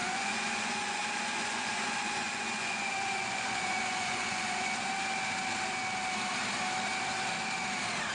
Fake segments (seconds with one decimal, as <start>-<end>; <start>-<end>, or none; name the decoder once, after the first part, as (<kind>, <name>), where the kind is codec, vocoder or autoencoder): 0.0-4.9 (vocoder, Vocos)